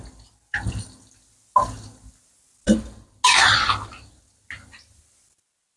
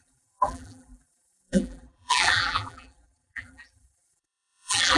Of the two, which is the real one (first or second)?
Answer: first